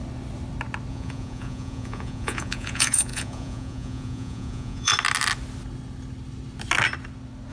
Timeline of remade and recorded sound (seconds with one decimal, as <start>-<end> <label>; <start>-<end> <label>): 0.0-0.9 recorded; 0.9-4.9 remade; 4.9-7.5 recorded